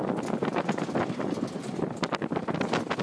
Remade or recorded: recorded